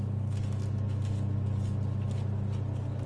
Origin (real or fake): real